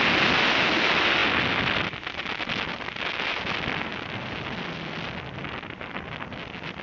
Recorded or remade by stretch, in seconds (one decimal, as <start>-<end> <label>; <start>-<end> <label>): 0.0-6.8 recorded